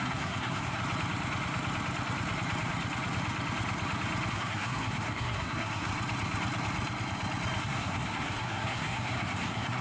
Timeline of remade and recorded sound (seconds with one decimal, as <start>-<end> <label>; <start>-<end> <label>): 0.0-0.8 remade; 0.8-4.3 recorded; 4.3-5.9 remade; 5.9-7.6 recorded; 7.6-9.8 remade